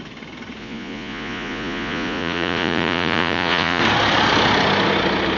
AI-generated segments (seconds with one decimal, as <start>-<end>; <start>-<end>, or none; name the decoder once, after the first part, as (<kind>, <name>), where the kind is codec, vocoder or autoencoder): 0.6-3.8 (vocoder, Vocos)